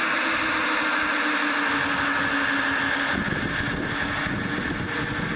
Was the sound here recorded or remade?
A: recorded